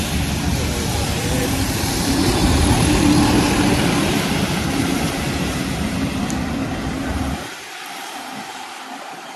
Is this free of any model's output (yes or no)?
no